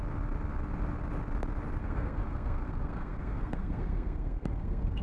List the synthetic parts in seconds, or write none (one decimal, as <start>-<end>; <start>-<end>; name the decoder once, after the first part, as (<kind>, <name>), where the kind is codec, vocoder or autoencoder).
1.8-5.0 (codec, SNAC)